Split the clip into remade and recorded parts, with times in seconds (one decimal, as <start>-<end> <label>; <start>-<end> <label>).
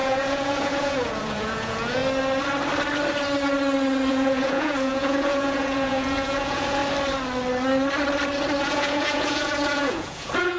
0.0-2.0 remade; 2.0-4.1 recorded; 4.1-6.8 remade; 6.8-8.6 recorded; 8.6-10.6 remade